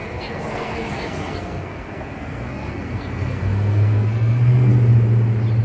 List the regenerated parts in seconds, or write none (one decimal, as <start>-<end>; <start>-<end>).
0.0-4.7